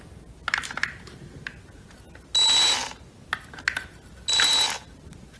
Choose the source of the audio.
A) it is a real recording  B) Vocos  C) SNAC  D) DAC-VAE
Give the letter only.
A